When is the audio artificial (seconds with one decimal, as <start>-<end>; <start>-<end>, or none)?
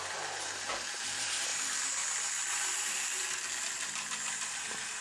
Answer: none